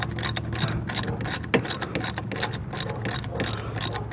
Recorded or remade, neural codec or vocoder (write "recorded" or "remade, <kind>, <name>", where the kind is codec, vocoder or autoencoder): recorded